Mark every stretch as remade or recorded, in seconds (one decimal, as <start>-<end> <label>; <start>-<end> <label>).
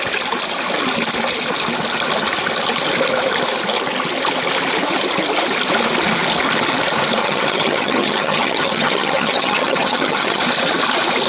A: 0.0-7.2 recorded; 7.2-10.4 remade; 10.4-11.3 recorded